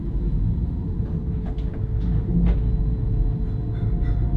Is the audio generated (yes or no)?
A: no